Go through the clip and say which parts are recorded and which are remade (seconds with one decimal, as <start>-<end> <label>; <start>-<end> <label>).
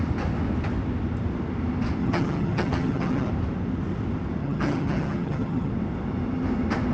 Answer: 0.0-2.0 recorded; 2.0-3.3 remade; 3.3-4.4 recorded; 4.4-5.7 remade; 5.7-6.9 recorded